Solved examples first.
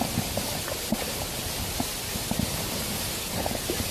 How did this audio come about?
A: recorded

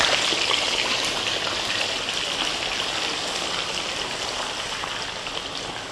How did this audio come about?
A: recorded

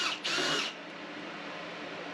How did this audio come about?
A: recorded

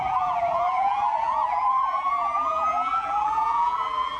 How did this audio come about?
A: remade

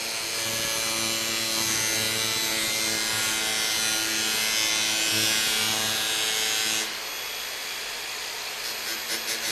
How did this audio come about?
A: recorded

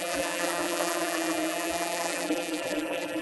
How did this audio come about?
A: remade